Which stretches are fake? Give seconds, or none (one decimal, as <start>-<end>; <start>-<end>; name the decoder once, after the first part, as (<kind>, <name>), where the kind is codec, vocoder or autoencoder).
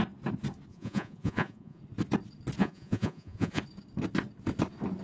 0.7-1.8 (vocoder, Vocos); 2.6-3.6